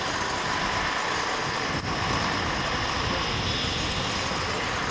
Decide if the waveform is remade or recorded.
recorded